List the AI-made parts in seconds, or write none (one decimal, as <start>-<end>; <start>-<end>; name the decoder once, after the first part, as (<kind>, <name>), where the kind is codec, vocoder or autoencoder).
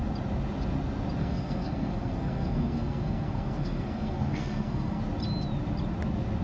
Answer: 1.2-5.0 (codec, SNAC)